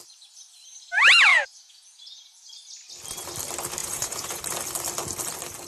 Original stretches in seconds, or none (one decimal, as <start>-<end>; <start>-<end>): 0.0-1.3; 2.5-3.8; 4.4-5.7